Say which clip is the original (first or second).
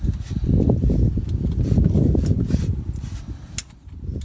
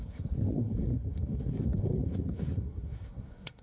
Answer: first